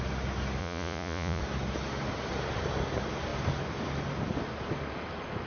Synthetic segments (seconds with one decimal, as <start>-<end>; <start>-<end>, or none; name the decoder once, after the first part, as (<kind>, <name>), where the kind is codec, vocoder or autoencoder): 0.6-1.4 (vocoder, Vocos)